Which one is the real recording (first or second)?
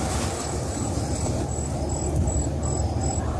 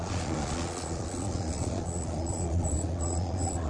first